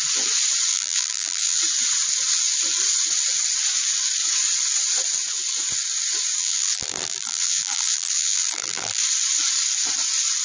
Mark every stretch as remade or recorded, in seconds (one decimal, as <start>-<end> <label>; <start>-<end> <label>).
0.0-0.7 recorded; 0.7-1.6 remade; 1.6-6.4 recorded; 6.4-9.0 remade; 9.0-10.4 recorded